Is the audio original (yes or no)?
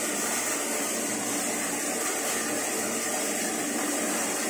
yes